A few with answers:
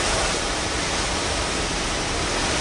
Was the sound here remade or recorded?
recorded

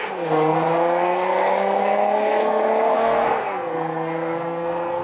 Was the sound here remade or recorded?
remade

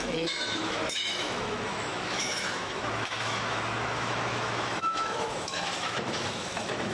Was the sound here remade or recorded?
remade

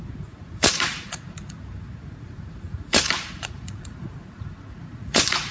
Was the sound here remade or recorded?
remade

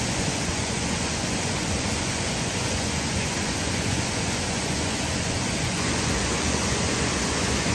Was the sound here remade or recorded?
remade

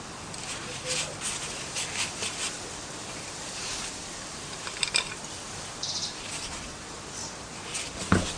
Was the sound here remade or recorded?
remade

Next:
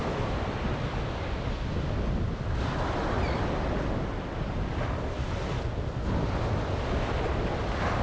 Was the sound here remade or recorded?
recorded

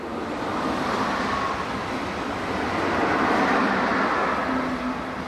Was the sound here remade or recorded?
recorded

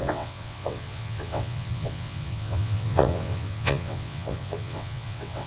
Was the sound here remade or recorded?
remade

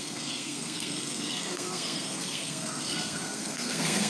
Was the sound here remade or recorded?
remade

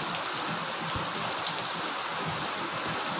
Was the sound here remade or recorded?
recorded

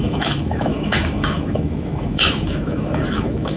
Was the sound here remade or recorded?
remade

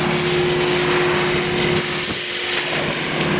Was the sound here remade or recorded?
recorded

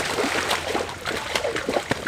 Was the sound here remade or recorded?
recorded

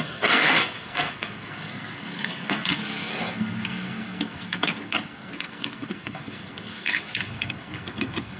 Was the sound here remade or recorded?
remade